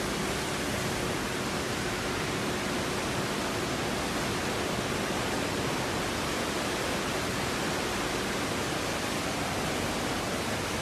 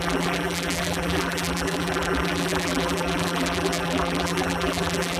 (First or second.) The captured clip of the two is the first